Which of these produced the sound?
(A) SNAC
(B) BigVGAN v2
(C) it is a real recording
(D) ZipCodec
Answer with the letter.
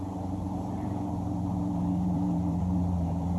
B